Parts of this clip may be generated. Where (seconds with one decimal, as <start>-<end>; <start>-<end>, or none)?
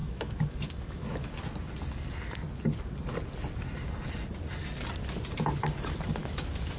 0.0-1.3; 6.2-6.8